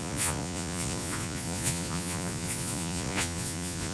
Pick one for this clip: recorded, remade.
remade